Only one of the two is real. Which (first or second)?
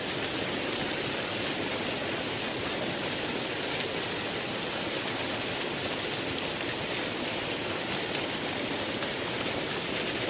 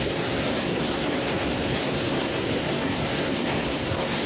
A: first